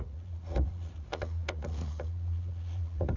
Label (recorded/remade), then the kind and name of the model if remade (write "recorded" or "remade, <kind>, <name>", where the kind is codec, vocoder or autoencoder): remade, vocoder, Vocos